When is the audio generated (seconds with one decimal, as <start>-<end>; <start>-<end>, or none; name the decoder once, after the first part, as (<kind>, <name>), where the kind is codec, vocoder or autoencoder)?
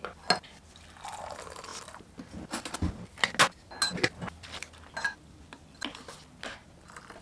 none